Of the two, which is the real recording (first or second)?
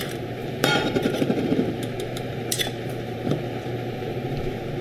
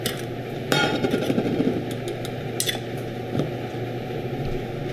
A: second